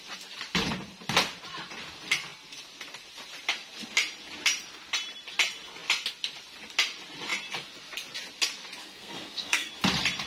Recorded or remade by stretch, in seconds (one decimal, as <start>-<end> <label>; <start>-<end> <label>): 0.0-8.8 recorded; 8.8-9.7 remade; 9.7-10.3 recorded